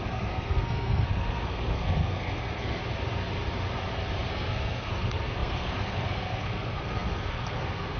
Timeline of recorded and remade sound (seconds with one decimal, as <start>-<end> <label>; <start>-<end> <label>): 0.0-2.8 remade; 2.8-4.3 recorded; 4.3-8.0 remade